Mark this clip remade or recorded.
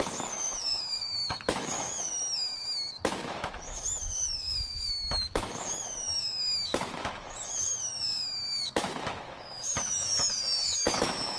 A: remade